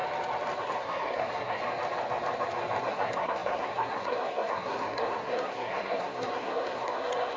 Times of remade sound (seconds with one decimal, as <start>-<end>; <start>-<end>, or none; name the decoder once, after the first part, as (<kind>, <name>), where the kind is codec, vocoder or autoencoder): 0.6-1.6 (codec, SNAC); 2.8-7.4